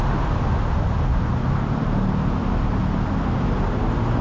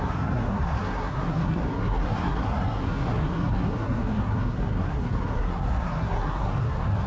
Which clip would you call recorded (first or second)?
first